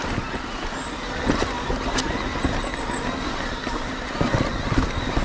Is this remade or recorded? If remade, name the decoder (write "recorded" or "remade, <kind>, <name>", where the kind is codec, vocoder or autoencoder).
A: recorded